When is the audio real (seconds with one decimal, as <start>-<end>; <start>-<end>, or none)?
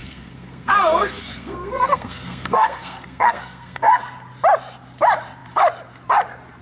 4.0-6.6